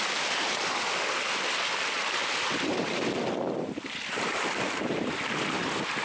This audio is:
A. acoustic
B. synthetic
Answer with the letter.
A